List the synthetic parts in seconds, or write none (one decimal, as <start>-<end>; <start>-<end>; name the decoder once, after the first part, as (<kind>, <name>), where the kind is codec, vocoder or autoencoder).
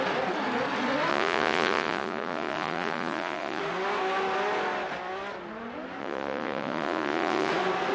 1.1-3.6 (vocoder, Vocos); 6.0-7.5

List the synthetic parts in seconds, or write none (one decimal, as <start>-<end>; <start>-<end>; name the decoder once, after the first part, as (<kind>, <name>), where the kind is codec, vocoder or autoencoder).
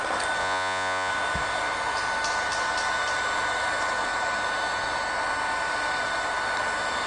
0.4-1.1 (vocoder, Vocos)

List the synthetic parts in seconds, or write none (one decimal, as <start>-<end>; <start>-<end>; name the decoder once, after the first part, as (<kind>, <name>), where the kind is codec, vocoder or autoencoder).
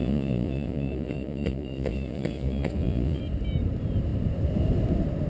0.0-3.2 (vocoder, Vocos)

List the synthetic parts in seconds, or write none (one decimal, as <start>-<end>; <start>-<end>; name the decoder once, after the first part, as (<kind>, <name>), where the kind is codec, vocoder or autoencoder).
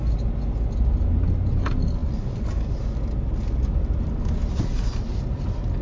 none